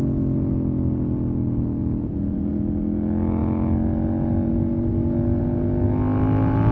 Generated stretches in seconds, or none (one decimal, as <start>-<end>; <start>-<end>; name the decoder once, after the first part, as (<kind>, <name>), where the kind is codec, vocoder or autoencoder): 1.8-2.5 (vocoder, Vocos)